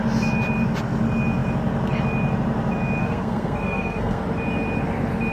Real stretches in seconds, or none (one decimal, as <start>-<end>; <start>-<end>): 0.0-3.0; 4.2-5.3